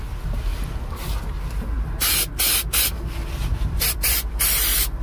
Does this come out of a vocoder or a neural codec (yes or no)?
no